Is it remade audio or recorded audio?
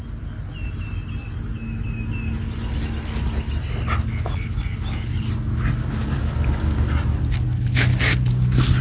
recorded